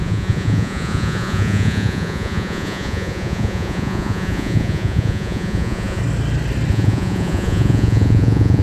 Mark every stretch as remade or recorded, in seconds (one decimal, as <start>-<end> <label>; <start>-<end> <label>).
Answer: 0.0-6.0 remade; 6.0-6.7 recorded; 6.7-8.6 remade